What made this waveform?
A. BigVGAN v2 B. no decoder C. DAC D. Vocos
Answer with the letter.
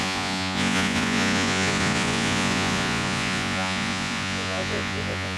D